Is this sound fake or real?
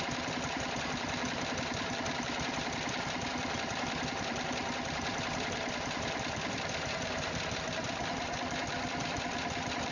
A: fake